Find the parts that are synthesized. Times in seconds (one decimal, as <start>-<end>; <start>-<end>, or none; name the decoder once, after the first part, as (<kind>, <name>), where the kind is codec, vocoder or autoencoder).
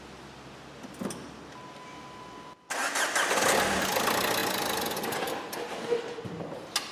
none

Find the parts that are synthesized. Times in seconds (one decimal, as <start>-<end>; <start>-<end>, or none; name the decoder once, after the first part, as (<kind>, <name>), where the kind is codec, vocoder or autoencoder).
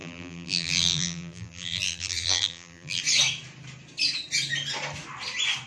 0.0-3.0 (vocoder, BigVGAN v2)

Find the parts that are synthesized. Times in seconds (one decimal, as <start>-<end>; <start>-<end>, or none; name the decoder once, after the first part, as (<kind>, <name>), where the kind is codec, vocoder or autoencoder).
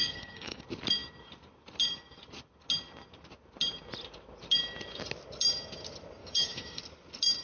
0.0-0.6 (codec, DAC); 6.2-6.8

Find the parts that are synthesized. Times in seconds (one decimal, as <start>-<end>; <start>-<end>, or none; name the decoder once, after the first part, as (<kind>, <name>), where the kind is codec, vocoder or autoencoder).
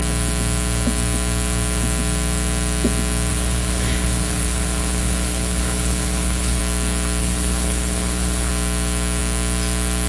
3.3-6.6 (codec, HILCodec); 7.2-8.5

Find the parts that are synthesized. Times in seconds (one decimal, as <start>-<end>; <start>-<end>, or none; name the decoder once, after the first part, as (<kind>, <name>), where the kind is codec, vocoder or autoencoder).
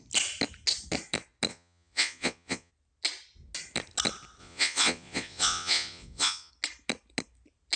1.5-2.7 (vocoder, Vocos); 4.4-6.5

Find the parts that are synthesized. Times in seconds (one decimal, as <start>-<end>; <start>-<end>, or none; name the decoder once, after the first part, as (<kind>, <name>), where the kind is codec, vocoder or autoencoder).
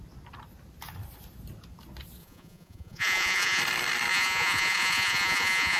2.2-3.6 (vocoder, Vocos); 4.1-5.8